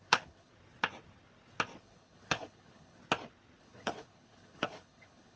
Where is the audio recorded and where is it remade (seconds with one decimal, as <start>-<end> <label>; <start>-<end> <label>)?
0.0-0.5 remade; 0.5-1.8 recorded; 1.8-3.0 remade; 3.0-3.6 recorded; 3.6-5.4 remade